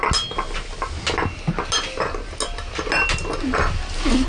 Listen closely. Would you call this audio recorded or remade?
recorded